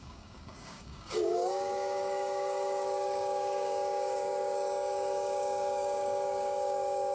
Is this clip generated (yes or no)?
yes